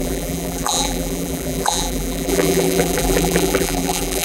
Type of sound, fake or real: fake